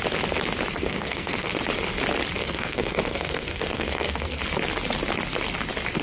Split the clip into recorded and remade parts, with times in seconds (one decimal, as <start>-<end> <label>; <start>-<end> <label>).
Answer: 0.0-0.8 recorded; 0.8-1.5 remade; 1.5-2.4 recorded; 2.4-4.4 remade; 4.4-6.0 recorded